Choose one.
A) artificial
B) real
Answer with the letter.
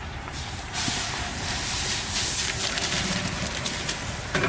A